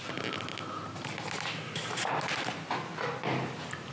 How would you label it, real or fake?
real